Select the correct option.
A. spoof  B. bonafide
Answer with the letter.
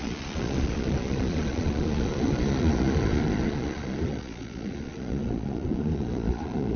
A